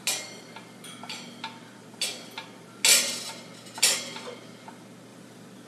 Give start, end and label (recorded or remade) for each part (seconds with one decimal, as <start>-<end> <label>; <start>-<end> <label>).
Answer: 0.0-5.1 recorded; 5.1-5.7 remade

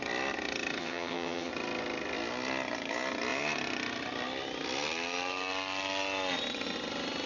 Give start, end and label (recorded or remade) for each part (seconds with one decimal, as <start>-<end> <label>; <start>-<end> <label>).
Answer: 0.0-0.8 recorded; 0.8-1.5 remade; 1.5-7.3 recorded

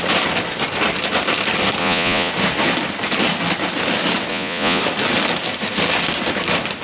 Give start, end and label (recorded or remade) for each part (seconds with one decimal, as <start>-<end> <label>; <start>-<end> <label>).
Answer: 0.0-1.8 recorded; 1.8-2.3 remade; 2.3-4.3 recorded; 4.3-4.8 remade; 4.8-6.8 recorded

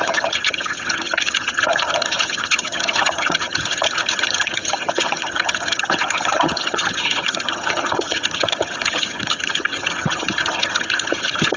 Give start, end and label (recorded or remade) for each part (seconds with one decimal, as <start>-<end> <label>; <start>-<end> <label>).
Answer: 0.0-11.6 remade